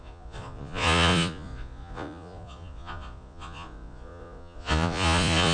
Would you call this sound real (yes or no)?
no